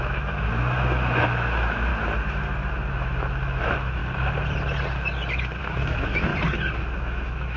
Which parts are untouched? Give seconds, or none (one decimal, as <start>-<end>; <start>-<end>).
1.9-2.9; 4.0-5.6; 6.3-6.8